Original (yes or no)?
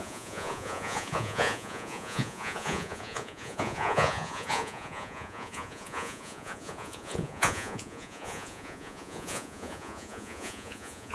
no